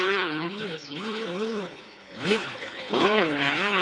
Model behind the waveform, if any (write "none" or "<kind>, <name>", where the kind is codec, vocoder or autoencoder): codec, HILCodec